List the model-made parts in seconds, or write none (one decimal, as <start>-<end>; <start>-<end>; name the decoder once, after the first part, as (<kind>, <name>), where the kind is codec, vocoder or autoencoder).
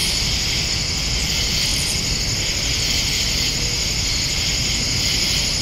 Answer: none